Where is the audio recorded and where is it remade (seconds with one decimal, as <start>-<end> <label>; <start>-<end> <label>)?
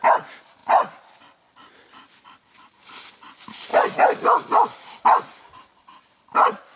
0.0-6.8 recorded